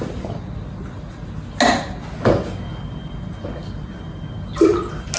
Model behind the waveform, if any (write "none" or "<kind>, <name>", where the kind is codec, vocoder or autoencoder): none